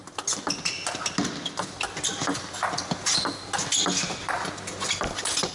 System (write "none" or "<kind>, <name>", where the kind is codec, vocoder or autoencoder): none